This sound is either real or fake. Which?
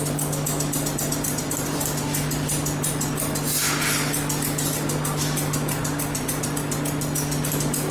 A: real